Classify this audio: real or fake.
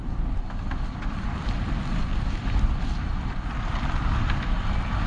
real